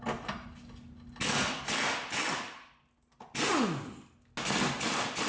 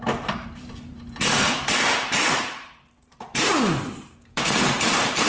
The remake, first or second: second